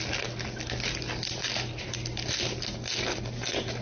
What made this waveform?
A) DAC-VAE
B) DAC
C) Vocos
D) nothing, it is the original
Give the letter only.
D